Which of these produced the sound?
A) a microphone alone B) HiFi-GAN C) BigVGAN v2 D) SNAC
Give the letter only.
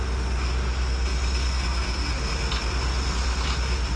A